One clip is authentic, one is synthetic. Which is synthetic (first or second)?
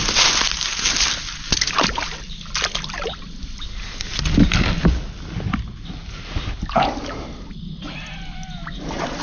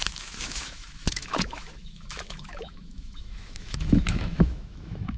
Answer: second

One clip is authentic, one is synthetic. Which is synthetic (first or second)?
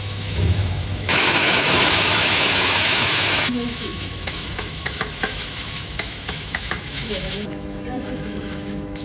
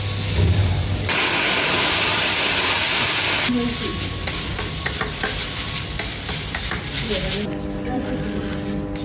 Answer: first